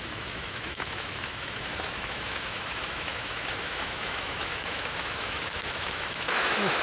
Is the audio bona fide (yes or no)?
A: no